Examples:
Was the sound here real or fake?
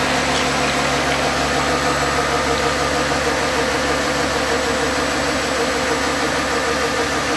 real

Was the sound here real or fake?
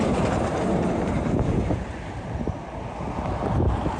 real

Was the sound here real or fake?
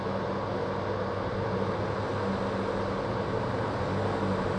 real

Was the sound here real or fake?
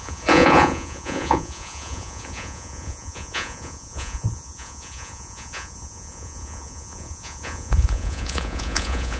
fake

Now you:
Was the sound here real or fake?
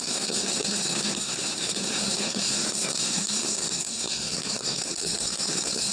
fake